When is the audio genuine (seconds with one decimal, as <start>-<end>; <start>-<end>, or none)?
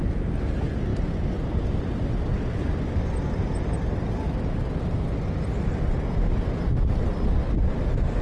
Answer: 0.0-8.2